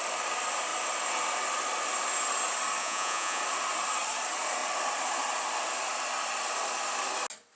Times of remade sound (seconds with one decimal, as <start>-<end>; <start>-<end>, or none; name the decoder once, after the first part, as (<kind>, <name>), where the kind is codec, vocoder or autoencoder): 2.8-3.4 (vocoder, Vocos)